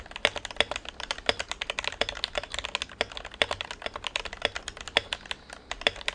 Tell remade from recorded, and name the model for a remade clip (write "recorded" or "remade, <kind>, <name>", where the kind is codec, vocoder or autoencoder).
recorded